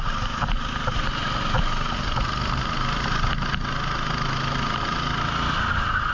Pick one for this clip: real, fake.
real